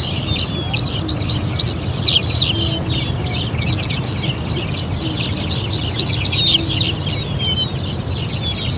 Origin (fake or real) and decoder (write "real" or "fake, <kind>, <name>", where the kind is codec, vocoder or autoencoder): real